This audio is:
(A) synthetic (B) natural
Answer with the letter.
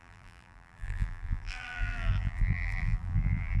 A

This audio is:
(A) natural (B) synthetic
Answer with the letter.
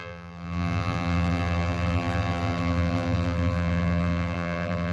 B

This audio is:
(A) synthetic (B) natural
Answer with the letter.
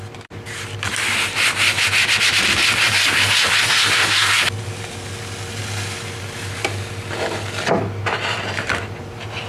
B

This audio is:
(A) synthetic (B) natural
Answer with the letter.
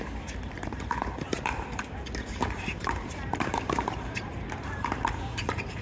A